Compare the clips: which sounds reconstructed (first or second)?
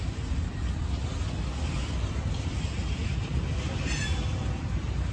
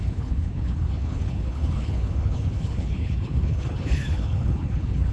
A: second